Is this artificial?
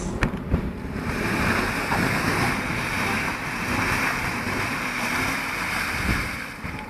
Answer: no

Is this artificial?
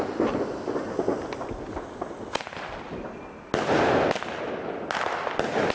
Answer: no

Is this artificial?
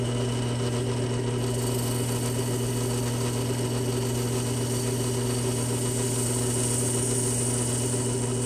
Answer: no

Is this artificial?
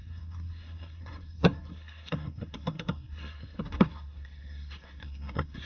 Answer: yes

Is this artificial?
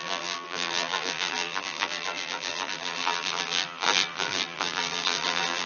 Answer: yes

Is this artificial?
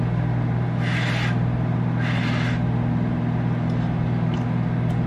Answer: no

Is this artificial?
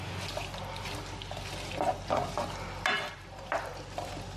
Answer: no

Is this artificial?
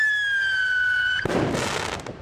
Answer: no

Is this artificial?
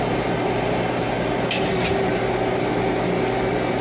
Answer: no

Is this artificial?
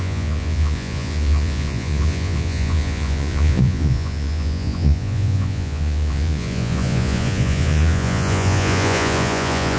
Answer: yes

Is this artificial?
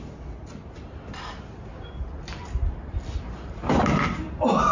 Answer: no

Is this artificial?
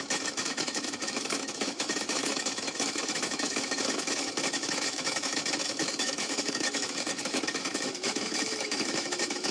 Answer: yes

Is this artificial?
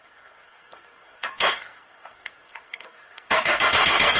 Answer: yes